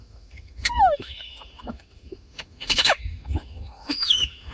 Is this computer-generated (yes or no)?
yes